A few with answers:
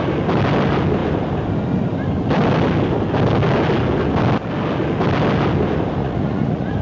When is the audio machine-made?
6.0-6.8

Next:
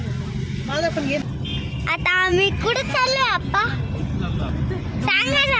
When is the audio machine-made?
none

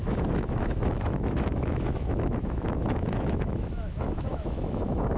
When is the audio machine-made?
0.0-5.2